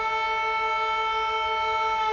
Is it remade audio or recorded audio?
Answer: recorded